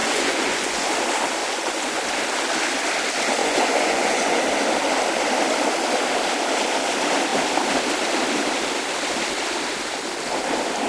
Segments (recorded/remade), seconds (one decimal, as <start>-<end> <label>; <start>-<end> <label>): 0.0-0.9 remade; 0.9-1.4 recorded; 1.4-2.0 remade; 2.0-3.4 recorded; 3.4-4.4 remade; 4.4-10.9 recorded